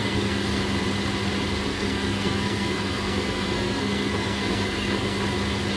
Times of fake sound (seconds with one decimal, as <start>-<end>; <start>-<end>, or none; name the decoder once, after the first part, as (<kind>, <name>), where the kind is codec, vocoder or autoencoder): 0.0-0.6 (codec, SNAC); 1.7-5.2